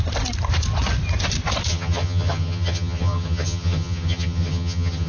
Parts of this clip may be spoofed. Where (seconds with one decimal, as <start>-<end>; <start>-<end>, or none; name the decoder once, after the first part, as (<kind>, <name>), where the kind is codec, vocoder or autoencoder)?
1.7-5.1 (vocoder, HiFi-GAN)